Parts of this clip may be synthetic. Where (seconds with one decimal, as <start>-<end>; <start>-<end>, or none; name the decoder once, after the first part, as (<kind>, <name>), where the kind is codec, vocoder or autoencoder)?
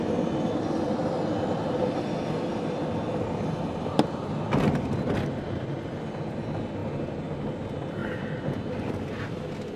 none